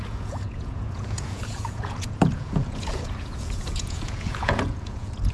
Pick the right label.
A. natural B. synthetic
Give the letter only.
B